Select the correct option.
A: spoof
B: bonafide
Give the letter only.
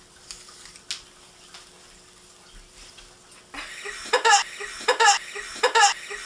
B